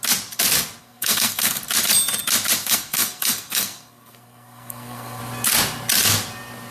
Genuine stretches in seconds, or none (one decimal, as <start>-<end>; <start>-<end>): 0.0-0.8; 1.6-2.6; 5.2-6.7